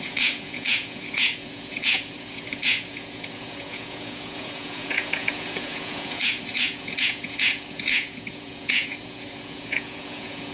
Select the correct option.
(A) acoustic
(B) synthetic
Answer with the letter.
B